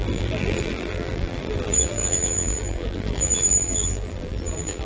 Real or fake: fake